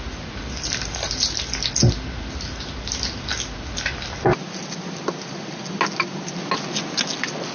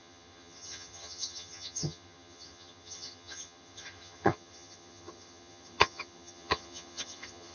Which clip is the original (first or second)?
first